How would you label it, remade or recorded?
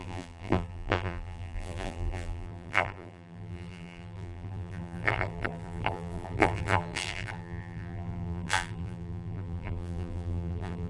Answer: remade